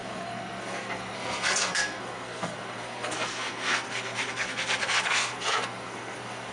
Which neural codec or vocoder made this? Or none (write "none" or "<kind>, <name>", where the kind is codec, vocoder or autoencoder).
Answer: codec, SNAC